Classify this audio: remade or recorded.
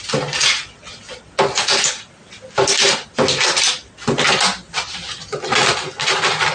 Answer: recorded